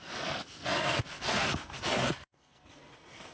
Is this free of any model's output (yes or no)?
no